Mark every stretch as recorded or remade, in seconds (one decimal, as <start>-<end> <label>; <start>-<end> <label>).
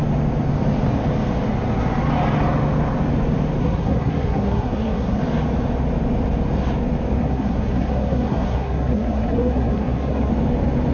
0.0-3.6 recorded; 3.6-5.2 remade; 5.2-7.2 recorded; 7.2-10.3 remade; 10.3-10.9 recorded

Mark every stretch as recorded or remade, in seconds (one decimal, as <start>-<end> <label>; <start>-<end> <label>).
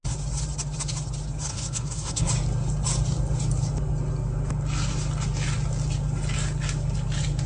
0.0-1.5 recorded; 1.5-2.3 remade; 2.3-7.5 recorded